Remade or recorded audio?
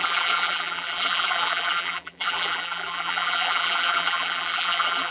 remade